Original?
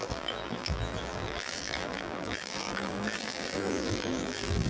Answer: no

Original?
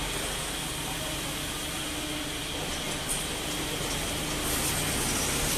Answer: yes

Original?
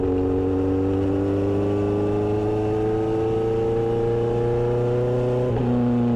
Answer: yes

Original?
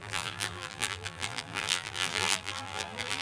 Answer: no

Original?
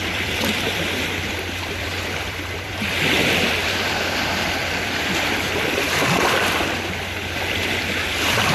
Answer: no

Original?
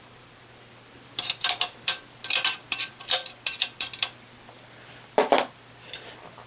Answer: no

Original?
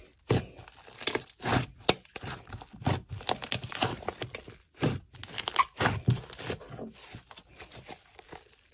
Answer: yes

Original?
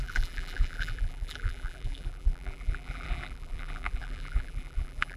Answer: no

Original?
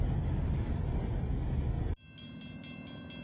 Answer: yes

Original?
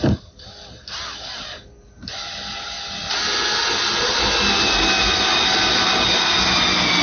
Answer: yes